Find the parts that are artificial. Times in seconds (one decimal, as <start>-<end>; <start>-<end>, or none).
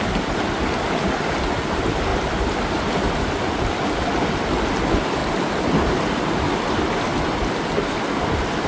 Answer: none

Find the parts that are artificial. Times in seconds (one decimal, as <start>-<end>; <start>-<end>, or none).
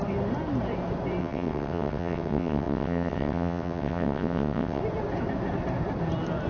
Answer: 1.2-4.8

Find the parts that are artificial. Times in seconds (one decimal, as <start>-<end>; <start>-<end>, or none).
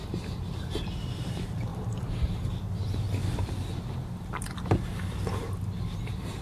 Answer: 0.0-0.9; 1.7-2.5; 3.2-5.4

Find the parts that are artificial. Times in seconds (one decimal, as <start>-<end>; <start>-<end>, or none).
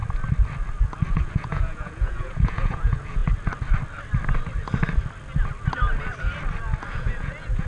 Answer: 1.2-3.2; 6.9-7.7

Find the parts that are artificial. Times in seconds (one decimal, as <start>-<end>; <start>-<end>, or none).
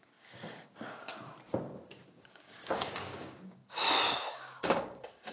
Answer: 0.0-1.1; 2.1-3.6; 4.2-5.3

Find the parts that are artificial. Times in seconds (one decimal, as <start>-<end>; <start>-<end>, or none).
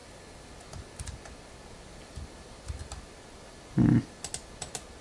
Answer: 0.0-0.6; 1.9-2.8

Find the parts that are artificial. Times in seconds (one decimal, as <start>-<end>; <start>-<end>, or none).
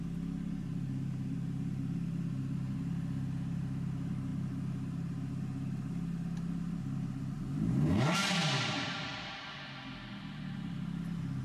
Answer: none